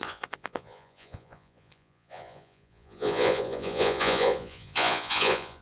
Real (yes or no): no